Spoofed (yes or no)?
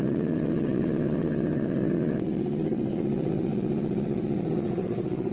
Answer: yes